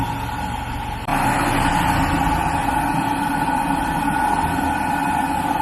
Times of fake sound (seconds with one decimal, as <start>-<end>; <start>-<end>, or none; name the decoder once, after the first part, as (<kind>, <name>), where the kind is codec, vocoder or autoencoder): none